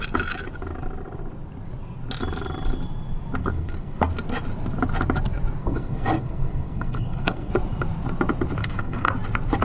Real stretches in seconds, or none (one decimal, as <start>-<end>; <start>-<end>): 0.0-3.4; 4.1-5.6; 7.5-8.6; 9.1-9.6